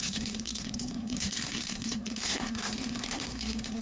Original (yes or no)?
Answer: no